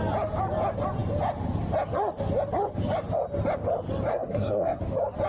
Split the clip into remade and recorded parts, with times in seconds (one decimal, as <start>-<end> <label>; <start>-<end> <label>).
0.0-4.1 recorded; 4.1-4.8 remade; 4.8-5.3 recorded

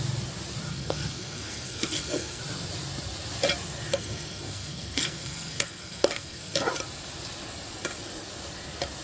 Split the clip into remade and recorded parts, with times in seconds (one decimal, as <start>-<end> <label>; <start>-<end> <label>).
0.0-0.7 recorded; 0.7-2.4 remade; 2.4-3.9 recorded; 3.9-6.6 remade; 6.6-9.0 recorded

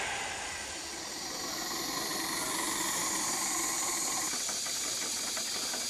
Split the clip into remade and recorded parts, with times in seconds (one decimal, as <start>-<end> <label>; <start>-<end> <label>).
0.0-5.9 recorded

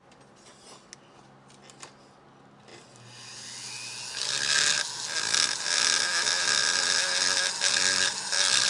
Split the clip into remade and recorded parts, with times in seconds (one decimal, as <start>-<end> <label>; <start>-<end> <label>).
0.0-8.7 recorded

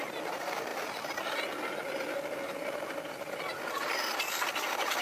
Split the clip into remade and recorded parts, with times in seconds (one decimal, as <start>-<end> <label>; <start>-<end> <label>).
0.0-5.0 recorded

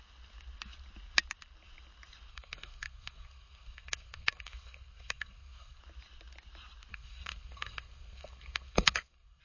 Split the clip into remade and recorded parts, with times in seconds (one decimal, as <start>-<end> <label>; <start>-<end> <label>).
0.0-2.3 recorded; 2.3-5.8 remade; 5.8-6.9 recorded; 6.9-9.4 remade

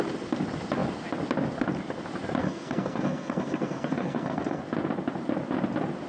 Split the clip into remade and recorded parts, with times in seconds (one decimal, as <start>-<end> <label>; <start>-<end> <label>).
0.0-2.4 recorded; 2.4-4.6 remade; 4.6-6.1 recorded

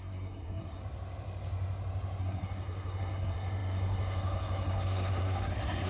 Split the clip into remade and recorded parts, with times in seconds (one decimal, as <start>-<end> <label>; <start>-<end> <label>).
0.0-0.8 remade; 0.8-2.2 recorded; 2.2-5.9 remade